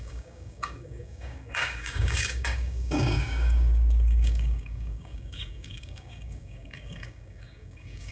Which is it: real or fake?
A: fake